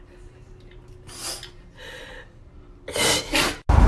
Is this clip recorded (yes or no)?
yes